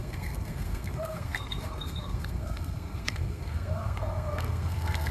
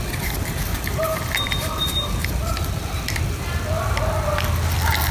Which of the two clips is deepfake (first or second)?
first